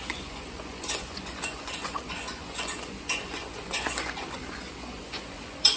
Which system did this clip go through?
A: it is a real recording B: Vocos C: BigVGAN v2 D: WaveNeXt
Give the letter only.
B